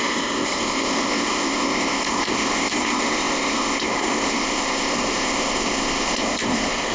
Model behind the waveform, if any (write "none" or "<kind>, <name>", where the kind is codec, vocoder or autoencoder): codec, ZipCodec